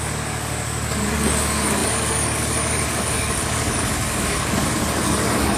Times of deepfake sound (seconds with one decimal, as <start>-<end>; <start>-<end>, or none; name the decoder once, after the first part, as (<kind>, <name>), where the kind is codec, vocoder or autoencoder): 0.0-5.6 (codec, DAC)